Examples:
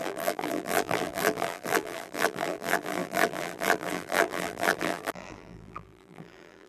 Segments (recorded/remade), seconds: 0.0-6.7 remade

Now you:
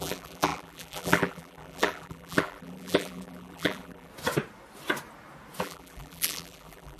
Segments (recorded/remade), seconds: 0.0-4.1 remade; 4.1-5.6 recorded; 5.6-7.0 remade

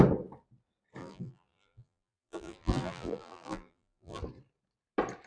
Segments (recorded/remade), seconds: 0.0-1.0 recorded; 1.0-4.2 remade; 4.2-5.3 recorded

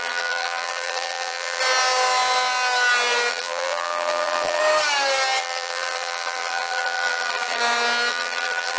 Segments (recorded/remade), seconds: 0.0-1.6 remade; 1.6-3.3 recorded; 3.3-4.6 remade; 4.6-5.4 recorded; 5.4-7.6 remade; 7.6-8.1 recorded; 8.1-8.8 remade